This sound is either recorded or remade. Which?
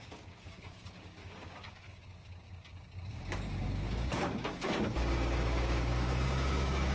remade